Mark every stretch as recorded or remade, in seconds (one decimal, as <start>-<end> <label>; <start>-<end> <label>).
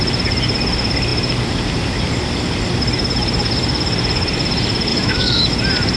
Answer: 0.0-4.9 recorded; 4.9-5.5 remade; 5.5-6.0 recorded